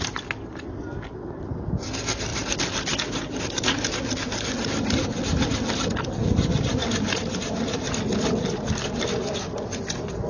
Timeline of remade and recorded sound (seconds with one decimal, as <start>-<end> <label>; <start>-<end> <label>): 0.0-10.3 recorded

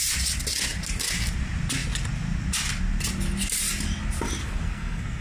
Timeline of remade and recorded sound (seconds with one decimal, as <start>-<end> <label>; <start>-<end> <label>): 0.0-4.4 recorded; 4.4-5.2 remade

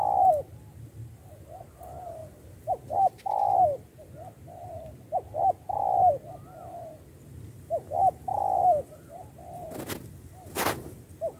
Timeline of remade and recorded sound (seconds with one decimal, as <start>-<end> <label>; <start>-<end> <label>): 0.0-11.4 recorded

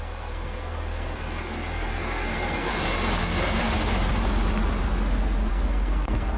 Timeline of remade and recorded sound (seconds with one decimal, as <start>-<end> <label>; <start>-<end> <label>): 0.0-2.7 remade; 2.7-3.2 recorded; 3.2-3.6 remade; 3.6-5.5 recorded; 5.5-6.4 remade

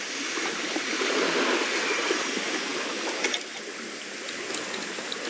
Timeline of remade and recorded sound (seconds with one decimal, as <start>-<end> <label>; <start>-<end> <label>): 0.0-5.3 recorded

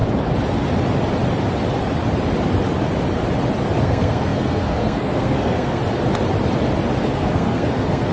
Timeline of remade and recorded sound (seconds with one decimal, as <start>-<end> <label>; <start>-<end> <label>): 0.0-3.8 recorded; 3.8-5.8 remade; 5.8-7.0 recorded; 7.0-8.1 remade

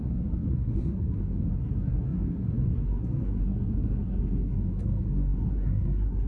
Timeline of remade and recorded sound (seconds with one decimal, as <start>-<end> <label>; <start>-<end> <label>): 0.0-6.3 remade

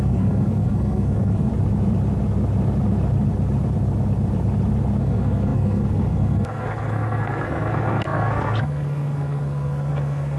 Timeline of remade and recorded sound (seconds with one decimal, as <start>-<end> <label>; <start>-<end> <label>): 0.0-1.5 remade; 1.5-5.0 recorded; 5.0-10.4 remade